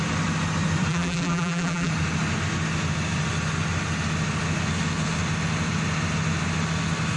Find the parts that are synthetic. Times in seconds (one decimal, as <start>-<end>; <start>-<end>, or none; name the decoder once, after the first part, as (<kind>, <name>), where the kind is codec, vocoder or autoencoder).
0.9-1.9 (vocoder, BigVGAN v2)